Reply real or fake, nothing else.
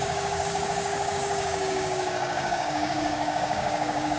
fake